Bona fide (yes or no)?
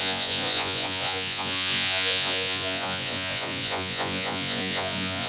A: no